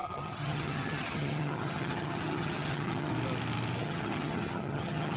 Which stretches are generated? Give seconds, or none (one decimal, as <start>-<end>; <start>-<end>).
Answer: 0.0-3.1; 3.8-5.2